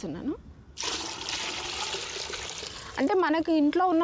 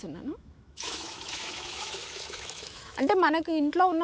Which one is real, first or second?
first